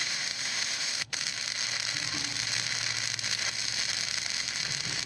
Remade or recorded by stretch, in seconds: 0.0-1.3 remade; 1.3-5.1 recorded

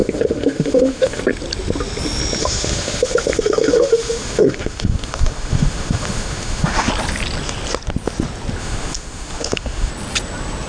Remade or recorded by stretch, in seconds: 0.0-1.2 remade; 1.2-2.4 recorded; 2.4-6.9 remade; 6.9-8.6 recorded; 8.6-9.9 remade; 9.9-10.7 recorded

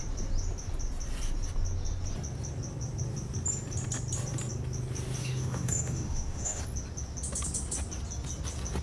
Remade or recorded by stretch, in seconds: 0.0-5.2 recorded; 5.2-6.6 remade; 6.6-8.8 recorded

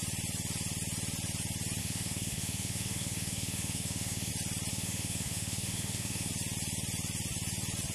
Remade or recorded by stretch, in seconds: 0.0-1.8 recorded; 1.8-4.3 remade; 4.3-4.7 recorded; 4.7-6.3 remade; 6.3-7.9 recorded

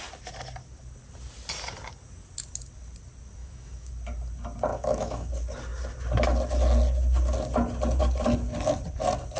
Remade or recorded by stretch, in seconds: 0.0-3.4 recorded; 3.4-3.9 remade; 3.9-4.7 recorded; 4.7-5.3 remade; 5.3-9.4 recorded

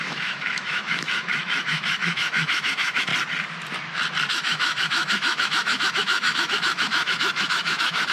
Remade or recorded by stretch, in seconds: 0.0-3.1 remade; 3.1-4.3 recorded; 4.3-8.1 remade

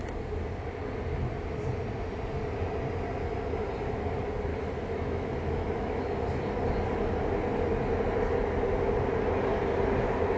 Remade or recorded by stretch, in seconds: 0.0-4.5 recorded; 4.5-6.0 remade; 6.0-10.4 recorded